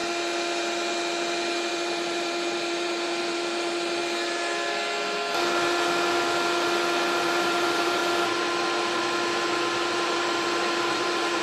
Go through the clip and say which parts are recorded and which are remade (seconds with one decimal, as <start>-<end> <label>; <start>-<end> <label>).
0.0-1.7 recorded; 1.7-4.0 remade; 4.0-7.2 recorded; 7.2-8.0 remade; 8.0-9.9 recorded; 9.9-11.4 remade